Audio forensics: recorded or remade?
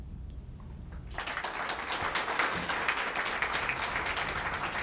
recorded